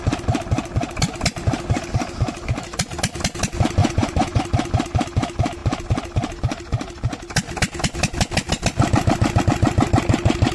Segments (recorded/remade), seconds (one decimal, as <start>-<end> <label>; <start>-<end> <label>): 0.0-3.8 recorded; 3.8-4.4 remade; 4.4-10.5 recorded